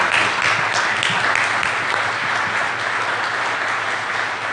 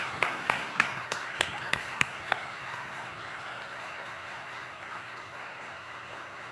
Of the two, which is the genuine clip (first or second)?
first